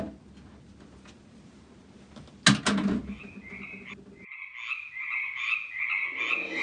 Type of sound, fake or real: real